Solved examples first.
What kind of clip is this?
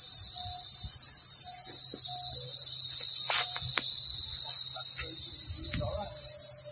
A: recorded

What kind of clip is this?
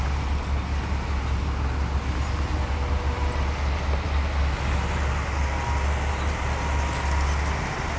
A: recorded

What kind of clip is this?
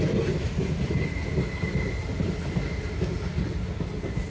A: recorded